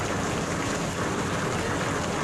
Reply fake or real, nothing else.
real